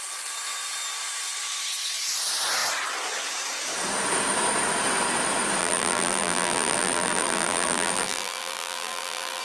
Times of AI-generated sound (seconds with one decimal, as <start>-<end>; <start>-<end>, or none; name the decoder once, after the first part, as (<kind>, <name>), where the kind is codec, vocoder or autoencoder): 5.6-9.4 (vocoder, BigVGAN v2)